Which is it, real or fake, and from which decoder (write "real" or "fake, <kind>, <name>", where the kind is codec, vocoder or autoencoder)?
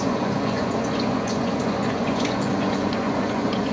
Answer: fake, vocoder, Vocos